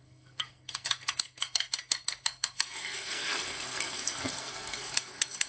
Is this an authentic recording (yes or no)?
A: no